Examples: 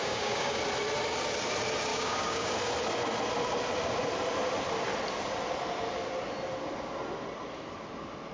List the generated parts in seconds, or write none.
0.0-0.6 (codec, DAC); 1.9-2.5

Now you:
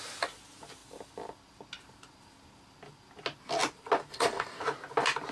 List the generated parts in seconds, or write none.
4.1-4.6 (codec, DAC)

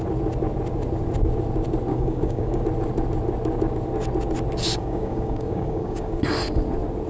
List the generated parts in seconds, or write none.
1.9-2.6 (codec, DAC); 4.7-6.2

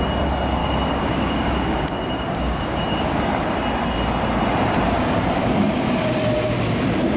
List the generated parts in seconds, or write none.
0.6-3.2 (codec, DAC)

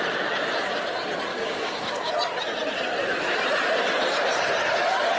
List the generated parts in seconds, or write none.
1.3-2.1 (codec, DAC)

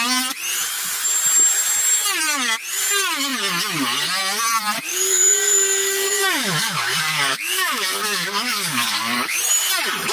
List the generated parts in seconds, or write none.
4.9-9.4 (codec, DAC)